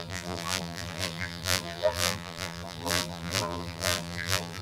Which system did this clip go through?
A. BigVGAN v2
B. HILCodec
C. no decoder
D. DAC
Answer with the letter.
A